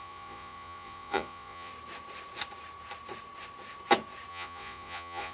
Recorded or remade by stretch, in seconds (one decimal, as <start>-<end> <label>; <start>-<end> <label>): 0.0-1.7 remade; 1.7-4.3 recorded; 4.3-5.3 remade

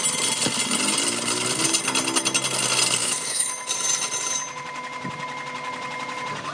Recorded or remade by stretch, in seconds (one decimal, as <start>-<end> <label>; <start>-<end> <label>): 0.0-3.0 recorded; 3.0-3.7 remade; 3.7-6.5 recorded